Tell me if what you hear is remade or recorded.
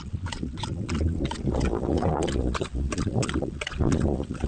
remade